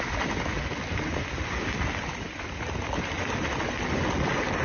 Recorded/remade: recorded